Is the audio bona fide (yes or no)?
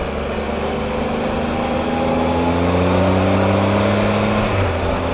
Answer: yes